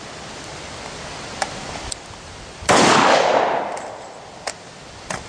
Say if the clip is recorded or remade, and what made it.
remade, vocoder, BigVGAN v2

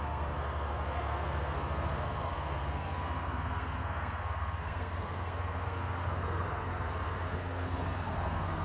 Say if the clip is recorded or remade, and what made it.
remade, codec, SNAC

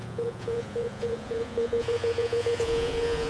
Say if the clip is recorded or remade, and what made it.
remade, vocoder, Vocos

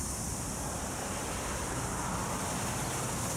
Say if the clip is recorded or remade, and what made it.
recorded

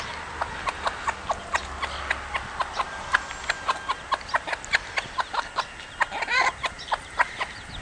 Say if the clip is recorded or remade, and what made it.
recorded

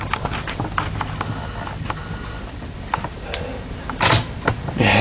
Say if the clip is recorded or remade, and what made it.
recorded